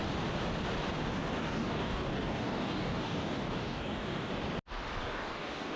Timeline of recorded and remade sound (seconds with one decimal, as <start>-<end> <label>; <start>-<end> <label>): 0.0-1.4 recorded; 1.4-4.3 remade; 4.3-5.0 recorded; 5.0-5.8 remade